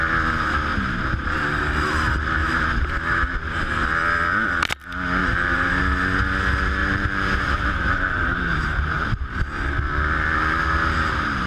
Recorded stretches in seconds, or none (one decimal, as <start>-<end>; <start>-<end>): 0.0-0.7; 1.6-2.4; 3.0-5.2; 5.8-6.8; 9.4-11.5